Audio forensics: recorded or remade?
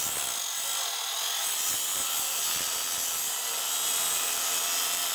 recorded